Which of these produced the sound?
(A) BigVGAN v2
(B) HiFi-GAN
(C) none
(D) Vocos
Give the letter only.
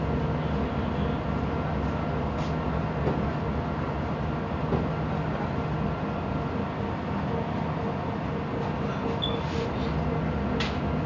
C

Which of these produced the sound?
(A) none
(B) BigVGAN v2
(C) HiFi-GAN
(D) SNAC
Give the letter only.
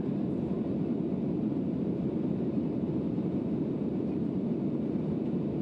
B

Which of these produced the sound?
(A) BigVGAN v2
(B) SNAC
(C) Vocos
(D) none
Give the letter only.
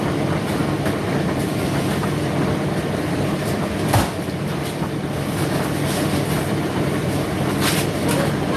A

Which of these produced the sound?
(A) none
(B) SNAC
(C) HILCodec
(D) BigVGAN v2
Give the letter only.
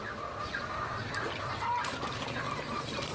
D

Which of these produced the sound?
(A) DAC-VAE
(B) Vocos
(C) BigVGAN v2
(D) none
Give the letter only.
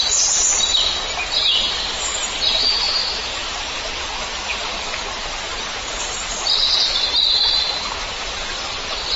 C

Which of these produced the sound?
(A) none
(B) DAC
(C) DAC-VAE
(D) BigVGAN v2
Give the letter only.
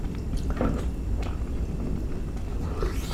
A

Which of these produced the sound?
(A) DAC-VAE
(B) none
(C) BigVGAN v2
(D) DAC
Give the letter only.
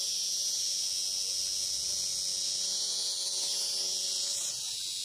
B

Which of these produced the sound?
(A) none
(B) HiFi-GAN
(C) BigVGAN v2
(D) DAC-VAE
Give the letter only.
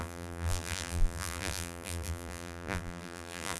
C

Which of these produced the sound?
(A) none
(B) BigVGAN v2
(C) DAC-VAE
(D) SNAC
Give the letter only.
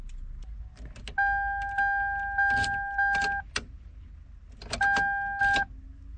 A